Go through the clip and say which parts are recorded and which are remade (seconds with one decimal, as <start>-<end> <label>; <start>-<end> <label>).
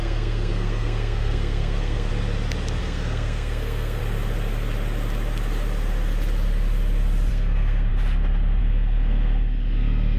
0.0-2.1 remade; 2.1-2.8 recorded; 2.8-4.0 remade; 4.0-7.3 recorded; 7.3-7.9 remade; 7.9-8.6 recorded; 8.6-10.2 remade